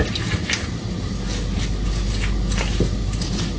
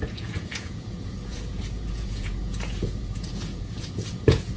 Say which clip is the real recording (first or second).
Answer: first